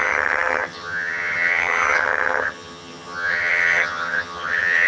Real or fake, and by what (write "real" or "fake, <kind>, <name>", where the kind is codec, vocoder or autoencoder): fake, vocoder, HiFi-GAN